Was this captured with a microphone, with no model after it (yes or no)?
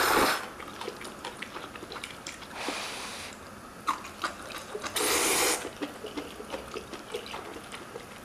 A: yes